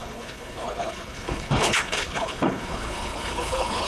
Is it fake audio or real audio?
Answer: fake